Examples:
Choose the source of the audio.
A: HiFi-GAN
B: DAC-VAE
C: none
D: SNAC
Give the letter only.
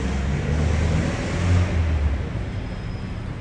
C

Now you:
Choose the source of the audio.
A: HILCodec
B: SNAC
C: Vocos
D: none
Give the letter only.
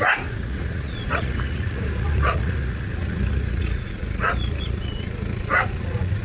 C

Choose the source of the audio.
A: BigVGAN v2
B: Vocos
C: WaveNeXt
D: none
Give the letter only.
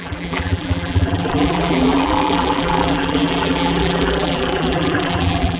A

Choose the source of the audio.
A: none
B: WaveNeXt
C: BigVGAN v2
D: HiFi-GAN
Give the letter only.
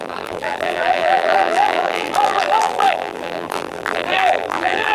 C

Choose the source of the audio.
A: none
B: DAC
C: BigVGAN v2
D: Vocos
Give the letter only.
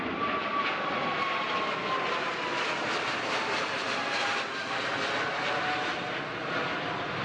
A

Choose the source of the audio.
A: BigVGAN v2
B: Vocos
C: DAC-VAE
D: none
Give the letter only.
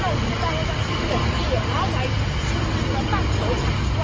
D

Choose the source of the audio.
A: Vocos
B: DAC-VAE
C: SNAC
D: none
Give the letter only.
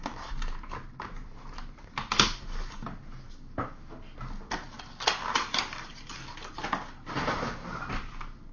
D